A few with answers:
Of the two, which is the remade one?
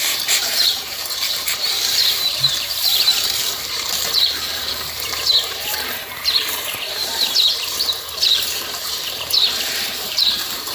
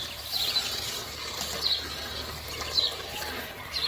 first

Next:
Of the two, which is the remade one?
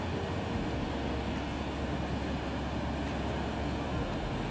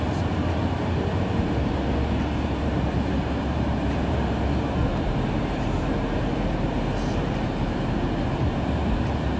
second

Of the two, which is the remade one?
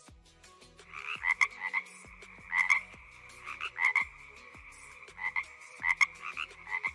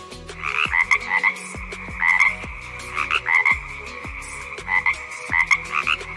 first